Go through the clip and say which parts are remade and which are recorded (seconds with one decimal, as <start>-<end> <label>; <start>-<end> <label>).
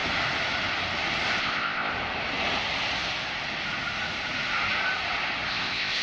0.0-1.4 recorded; 1.4-1.9 remade; 1.9-5.5 recorded; 5.5-6.0 remade